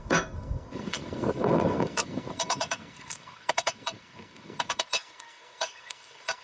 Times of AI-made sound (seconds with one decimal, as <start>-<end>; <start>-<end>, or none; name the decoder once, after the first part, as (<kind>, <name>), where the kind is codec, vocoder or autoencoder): 0.0-6.4 (codec, SNAC)